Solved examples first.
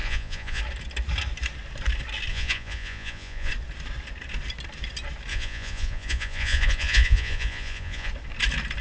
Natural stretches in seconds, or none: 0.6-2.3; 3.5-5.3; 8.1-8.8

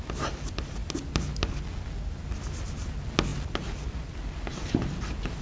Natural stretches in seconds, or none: 0.0-5.4